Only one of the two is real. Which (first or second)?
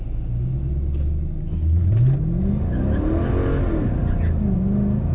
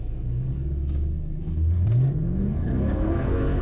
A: first